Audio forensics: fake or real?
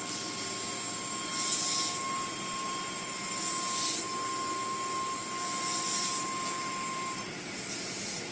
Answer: real